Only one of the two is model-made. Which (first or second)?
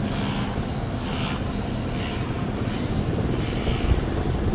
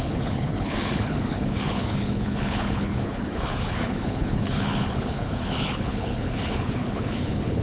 second